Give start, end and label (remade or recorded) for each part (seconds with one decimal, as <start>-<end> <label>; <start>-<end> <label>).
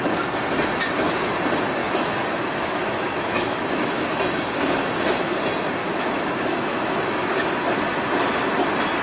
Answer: 0.0-1.8 recorded; 1.8-4.2 remade; 4.2-5.8 recorded; 5.8-7.5 remade; 7.5-9.0 recorded